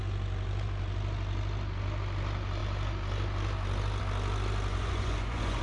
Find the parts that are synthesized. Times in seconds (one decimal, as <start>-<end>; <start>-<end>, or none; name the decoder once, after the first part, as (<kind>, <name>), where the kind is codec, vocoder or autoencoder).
4.7-5.6 (vocoder, Vocos)